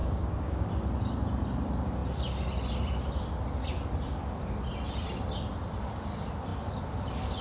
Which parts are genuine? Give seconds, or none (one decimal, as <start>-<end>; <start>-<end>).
0.7-7.4